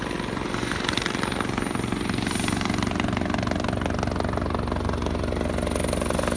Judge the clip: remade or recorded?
recorded